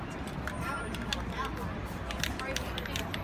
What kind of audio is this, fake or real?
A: real